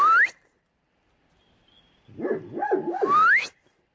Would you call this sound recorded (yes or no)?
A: yes